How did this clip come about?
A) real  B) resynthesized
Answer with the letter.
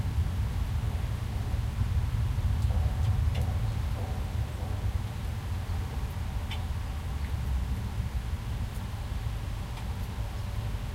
A